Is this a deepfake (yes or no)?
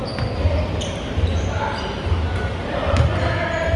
no